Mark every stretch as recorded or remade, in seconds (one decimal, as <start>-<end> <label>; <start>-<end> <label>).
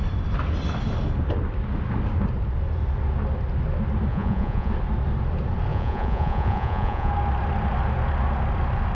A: 0.0-4.1 recorded; 4.1-4.7 remade; 4.7-5.7 recorded; 5.7-7.1 remade; 7.1-8.9 recorded